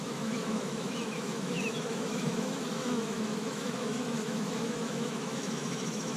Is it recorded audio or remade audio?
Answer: remade